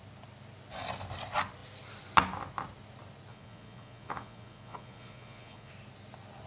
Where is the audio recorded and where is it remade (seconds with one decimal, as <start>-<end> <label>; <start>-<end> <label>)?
0.0-3.3 recorded; 3.3-5.7 remade; 5.7-6.5 recorded